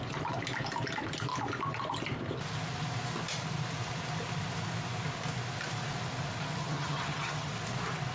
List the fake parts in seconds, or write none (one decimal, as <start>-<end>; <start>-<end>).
6.6-7.5